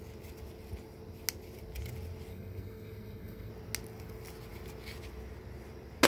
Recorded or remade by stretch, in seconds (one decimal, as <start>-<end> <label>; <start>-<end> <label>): 0.0-2.3 recorded; 2.3-3.5 remade; 3.5-6.1 recorded